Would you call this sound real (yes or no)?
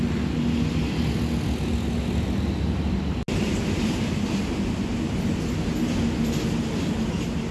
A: yes